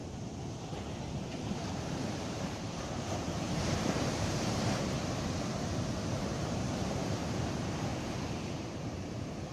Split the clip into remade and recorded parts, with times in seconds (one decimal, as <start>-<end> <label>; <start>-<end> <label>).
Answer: 0.0-1.7 recorded; 1.7-5.0 remade; 5.0-6.0 recorded; 6.0-7.9 remade; 7.9-8.6 recorded; 8.6-9.5 remade